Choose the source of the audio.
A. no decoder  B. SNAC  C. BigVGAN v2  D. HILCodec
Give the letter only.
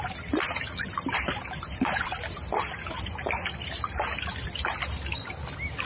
C